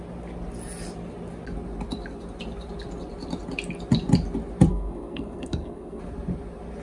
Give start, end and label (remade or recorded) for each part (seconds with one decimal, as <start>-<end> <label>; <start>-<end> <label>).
0.0-4.7 recorded; 4.7-6.0 remade; 6.0-6.8 recorded